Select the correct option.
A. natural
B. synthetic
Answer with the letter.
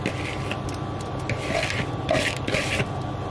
A